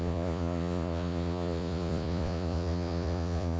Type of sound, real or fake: fake